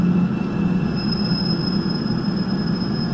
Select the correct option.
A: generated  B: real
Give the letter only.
B